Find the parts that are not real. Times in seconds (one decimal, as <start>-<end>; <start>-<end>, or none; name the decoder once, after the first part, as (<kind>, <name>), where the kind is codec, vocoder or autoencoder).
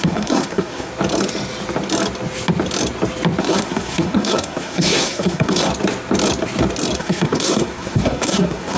0.0-0.9 (codec, SNAC); 3.4-5.7; 7.0-8.8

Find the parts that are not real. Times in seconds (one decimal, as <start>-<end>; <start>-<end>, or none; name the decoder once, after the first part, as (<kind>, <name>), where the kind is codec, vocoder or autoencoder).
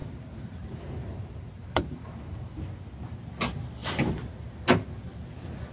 0.0-2.4 (vocoder, BigVGAN v2); 3.8-4.5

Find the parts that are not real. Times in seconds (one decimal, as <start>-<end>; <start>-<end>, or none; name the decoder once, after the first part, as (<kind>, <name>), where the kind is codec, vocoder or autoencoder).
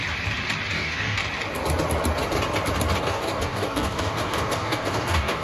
0.7-1.2 (codec, DAC); 3.0-5.4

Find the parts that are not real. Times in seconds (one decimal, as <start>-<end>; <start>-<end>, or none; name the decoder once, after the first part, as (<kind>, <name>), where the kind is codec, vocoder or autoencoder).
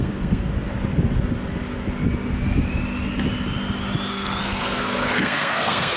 0.0-0.5 (codec, SNAC); 4.1-6.0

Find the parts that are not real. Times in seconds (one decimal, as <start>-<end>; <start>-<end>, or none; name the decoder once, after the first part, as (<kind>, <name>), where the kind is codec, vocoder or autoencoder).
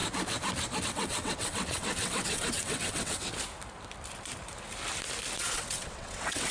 0.8-3.3 (vocoder, WaveNeXt); 5.4-6.5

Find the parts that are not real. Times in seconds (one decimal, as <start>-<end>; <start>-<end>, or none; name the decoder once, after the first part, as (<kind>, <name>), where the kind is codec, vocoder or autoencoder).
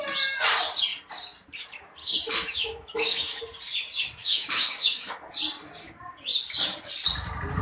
2.0-3.4 (autoencoder, DAC-VAE); 4.2-5.1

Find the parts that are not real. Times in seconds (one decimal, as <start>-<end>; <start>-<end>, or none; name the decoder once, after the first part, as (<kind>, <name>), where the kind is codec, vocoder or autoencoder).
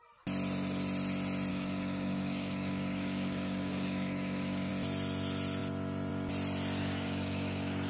1.5-4.7 (codec, DAC); 6.8-7.9